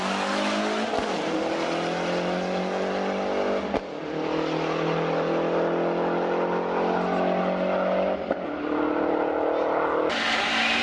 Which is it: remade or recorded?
recorded